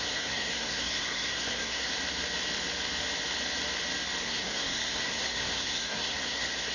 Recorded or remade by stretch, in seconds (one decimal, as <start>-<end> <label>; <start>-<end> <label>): 0.0-1.9 remade; 1.9-4.2 recorded; 4.2-6.7 remade